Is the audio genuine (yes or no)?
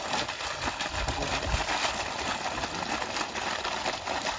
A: yes